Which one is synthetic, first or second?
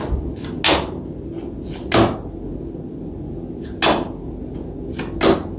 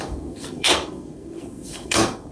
second